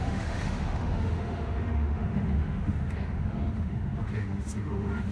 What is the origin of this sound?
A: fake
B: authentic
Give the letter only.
A